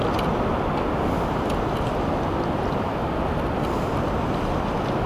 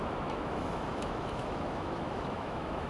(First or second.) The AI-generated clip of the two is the second